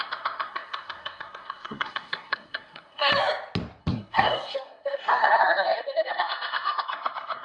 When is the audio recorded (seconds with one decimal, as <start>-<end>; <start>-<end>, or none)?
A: 3.1-3.8